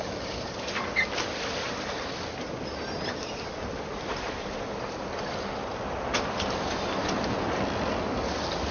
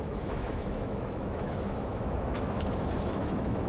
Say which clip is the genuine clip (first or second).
first